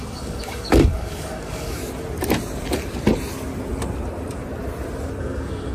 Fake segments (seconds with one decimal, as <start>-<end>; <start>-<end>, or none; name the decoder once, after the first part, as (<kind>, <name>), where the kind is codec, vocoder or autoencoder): 0.0-1.8 (codec, DAC); 5.2-5.7

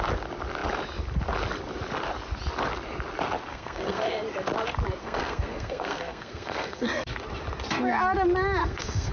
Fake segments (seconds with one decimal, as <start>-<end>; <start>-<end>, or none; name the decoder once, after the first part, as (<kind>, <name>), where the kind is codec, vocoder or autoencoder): 3.5-4.2 (codec, SNAC); 5.0-7.1; 8.6-9.1

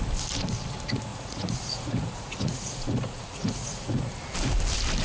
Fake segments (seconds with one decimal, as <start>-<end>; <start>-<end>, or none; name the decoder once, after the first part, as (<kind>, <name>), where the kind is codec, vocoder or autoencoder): 1.1-4.1 (vocoder, Vocos)